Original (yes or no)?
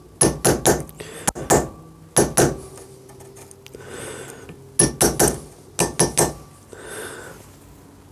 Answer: yes